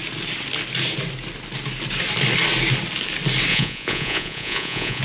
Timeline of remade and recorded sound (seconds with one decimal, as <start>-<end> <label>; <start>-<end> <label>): 0.0-3.5 recorded; 3.5-5.0 remade